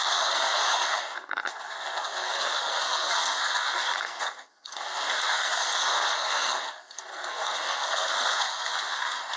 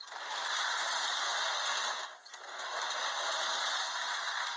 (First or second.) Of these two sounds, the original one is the second